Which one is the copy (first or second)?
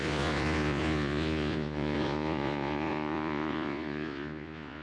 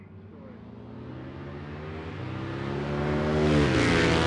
first